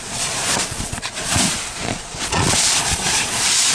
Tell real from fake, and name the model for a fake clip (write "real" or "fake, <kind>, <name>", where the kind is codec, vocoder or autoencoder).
fake, vocoder, Vocos